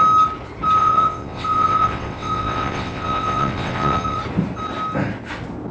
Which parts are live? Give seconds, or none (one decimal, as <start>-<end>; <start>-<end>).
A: 0.0-0.8; 4.2-5.7